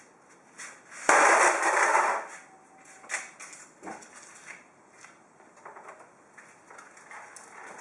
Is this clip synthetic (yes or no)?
no